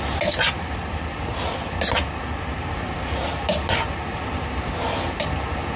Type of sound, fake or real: real